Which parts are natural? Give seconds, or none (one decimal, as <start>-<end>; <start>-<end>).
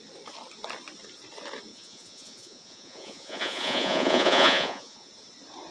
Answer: 0.0-1.7; 5.1-5.7